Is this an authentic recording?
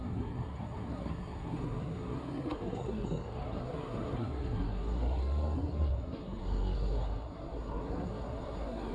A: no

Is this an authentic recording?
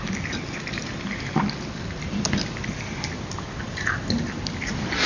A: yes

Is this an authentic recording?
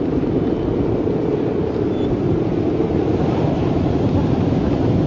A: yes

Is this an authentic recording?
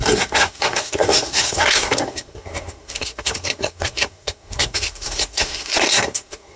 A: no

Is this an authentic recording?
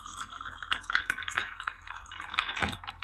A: no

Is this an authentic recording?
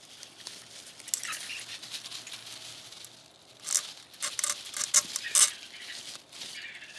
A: yes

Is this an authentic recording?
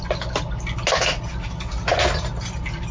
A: yes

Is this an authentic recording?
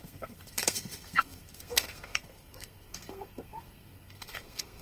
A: no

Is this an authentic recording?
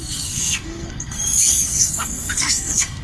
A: no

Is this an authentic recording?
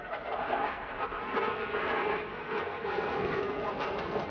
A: no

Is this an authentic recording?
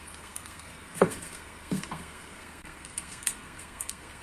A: no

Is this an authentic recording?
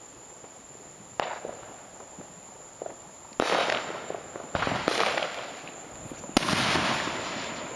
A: yes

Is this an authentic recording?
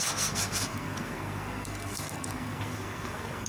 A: no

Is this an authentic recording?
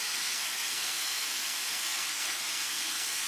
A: no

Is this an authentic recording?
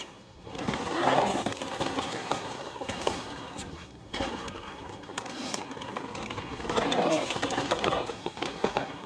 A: no